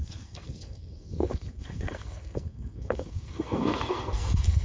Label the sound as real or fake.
fake